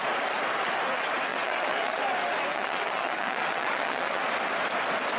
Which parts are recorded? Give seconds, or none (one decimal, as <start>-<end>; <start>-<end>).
0.0-1.3; 2.0-2.5; 4.2-5.2